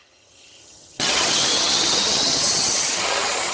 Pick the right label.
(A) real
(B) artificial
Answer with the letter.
B